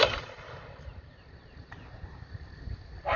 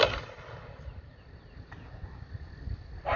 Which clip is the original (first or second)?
second